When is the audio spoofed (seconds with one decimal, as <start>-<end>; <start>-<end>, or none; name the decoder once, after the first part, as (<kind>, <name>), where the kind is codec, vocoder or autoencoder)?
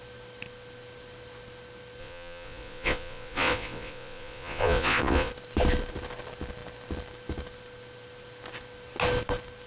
2.0-5.3 (vocoder, Vocos)